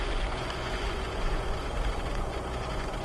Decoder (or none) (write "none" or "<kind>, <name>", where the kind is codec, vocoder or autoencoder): vocoder, Vocos